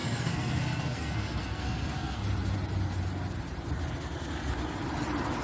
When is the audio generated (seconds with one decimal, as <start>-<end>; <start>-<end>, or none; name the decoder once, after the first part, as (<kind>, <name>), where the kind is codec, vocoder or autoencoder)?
0.0-2.2 (codec, SNAC)